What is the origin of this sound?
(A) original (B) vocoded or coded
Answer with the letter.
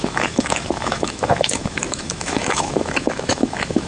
B